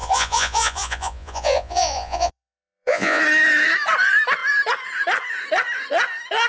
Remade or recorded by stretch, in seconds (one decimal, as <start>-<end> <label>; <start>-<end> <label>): 0.0-3.2 remade; 3.2-6.5 recorded